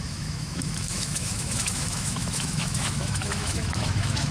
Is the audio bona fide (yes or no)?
no